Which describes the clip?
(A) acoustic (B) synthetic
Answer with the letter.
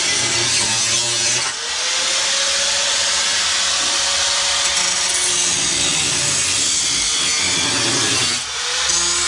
A